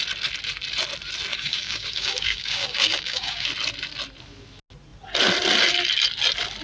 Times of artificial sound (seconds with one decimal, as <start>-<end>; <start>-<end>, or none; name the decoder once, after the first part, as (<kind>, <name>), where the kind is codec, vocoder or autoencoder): 1.3-3.5 (codec, DAC)